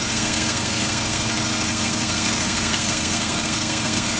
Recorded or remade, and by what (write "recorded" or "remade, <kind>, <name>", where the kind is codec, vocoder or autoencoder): remade, codec, SNAC